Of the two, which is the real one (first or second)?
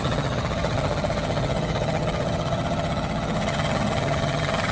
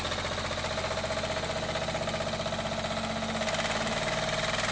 second